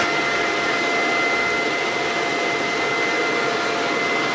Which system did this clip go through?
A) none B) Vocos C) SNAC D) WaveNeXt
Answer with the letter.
A